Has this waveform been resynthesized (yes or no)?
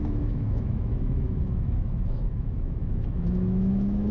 yes